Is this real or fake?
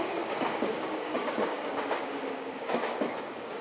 fake